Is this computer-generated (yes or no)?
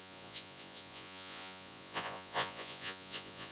yes